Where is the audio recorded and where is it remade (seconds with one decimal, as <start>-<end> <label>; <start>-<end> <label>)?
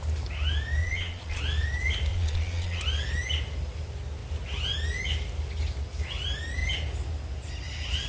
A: 0.0-0.8 recorded; 0.8-1.4 remade; 1.4-2.1 recorded; 2.1-2.8 remade; 2.8-8.1 recorded